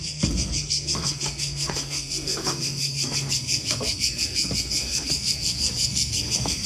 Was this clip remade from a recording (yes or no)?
yes